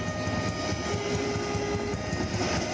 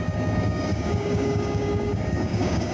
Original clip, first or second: first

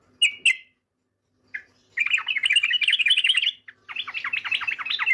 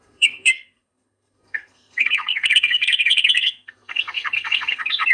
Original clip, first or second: first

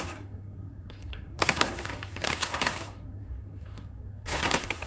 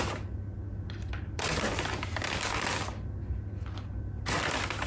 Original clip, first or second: second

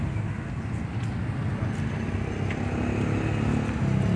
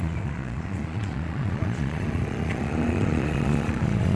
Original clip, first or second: first